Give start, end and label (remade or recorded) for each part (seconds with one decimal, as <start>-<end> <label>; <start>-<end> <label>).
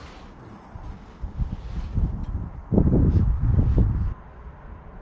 0.0-5.0 recorded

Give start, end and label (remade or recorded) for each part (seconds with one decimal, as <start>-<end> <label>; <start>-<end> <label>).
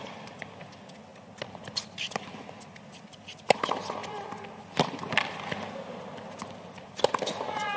0.0-7.8 recorded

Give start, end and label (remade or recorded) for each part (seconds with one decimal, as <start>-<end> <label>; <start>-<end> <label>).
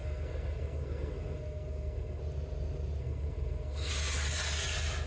0.0-2.2 remade; 2.2-3.0 recorded; 3.0-3.9 remade; 3.9-5.1 recorded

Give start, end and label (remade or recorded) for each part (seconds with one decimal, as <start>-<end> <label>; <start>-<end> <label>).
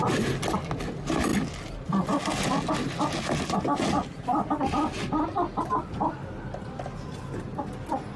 0.0-8.2 recorded